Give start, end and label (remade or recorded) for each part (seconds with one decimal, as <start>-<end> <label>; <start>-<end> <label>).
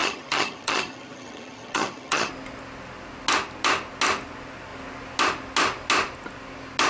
0.0-2.3 remade; 2.3-6.9 recorded